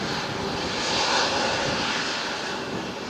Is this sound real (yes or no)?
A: yes